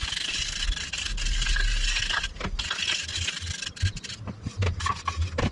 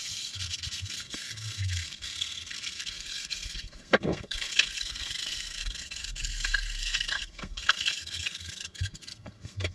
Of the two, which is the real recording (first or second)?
first